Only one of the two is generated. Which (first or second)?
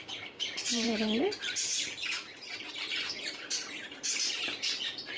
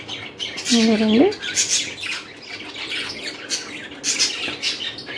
first